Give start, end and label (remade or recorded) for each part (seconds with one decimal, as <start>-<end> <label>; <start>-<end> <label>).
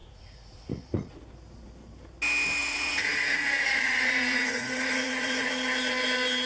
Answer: 0.0-1.2 remade; 1.2-2.6 recorded; 2.6-5.5 remade; 5.5-6.5 recorded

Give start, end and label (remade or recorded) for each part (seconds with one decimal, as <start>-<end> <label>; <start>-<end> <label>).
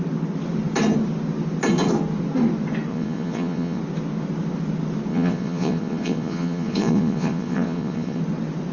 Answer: 0.0-2.9 recorded; 2.9-3.8 remade; 3.8-5.1 recorded; 5.1-8.2 remade; 8.2-8.7 recorded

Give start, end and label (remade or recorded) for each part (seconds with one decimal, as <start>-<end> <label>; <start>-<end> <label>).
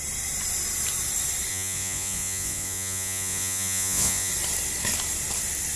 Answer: 0.0-1.5 recorded; 1.5-4.3 remade; 4.3-5.8 recorded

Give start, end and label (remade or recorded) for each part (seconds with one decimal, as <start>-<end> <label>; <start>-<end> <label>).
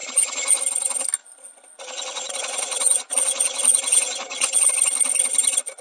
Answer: 0.0-0.6 remade; 0.6-1.2 recorded; 1.2-4.7 remade; 4.7-5.8 recorded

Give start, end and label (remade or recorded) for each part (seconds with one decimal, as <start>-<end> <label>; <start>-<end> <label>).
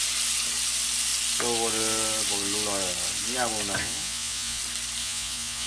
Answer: 0.0-3.8 recorded; 3.8-4.6 remade; 4.6-5.0 recorded; 5.0-5.7 remade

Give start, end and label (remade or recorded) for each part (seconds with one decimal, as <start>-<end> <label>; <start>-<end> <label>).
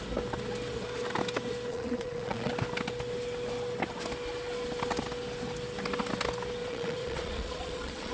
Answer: 0.0-1.7 recorded; 1.7-2.5 remade; 2.5-6.6 recorded; 6.6-8.1 remade